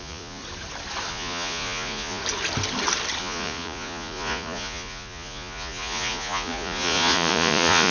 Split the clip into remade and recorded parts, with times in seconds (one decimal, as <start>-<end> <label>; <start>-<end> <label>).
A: 0.0-0.4 remade; 0.4-1.1 recorded; 1.1-2.2 remade; 2.2-3.2 recorded; 3.2-7.9 remade